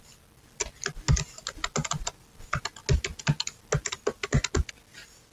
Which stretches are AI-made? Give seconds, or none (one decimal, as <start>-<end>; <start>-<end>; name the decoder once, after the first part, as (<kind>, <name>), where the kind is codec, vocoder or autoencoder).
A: none